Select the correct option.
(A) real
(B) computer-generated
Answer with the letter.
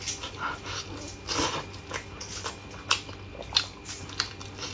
A